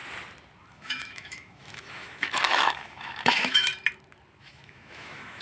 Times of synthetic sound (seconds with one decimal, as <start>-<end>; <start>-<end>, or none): 0.7-3.7; 4.4-5.4